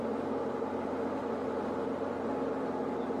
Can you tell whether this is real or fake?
real